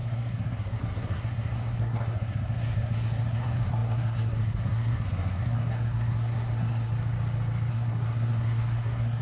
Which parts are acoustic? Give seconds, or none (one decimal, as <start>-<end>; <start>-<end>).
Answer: 6.9-7.7